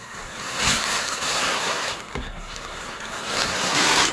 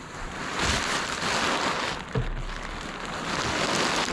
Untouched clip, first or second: second